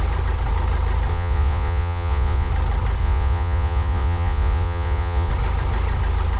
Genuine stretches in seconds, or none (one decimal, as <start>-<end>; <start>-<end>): 0.0-1.1; 2.5-3.0; 5.3-6.4

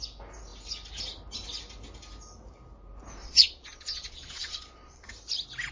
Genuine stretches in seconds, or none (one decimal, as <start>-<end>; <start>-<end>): 0.0-3.2; 5.1-5.7

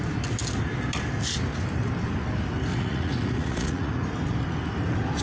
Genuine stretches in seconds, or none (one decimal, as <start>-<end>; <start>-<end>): 0.0-2.7; 3.9-5.2

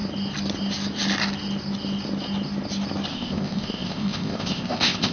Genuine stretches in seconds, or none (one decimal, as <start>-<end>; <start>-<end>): 0.0-3.1

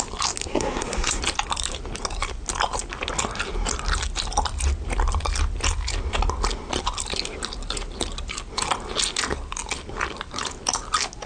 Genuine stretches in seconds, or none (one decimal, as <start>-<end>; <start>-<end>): 0.0-0.4; 1.2-11.3

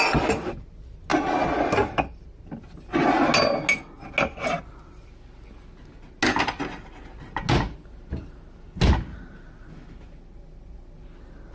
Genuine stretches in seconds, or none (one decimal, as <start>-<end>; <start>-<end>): 0.0-11.5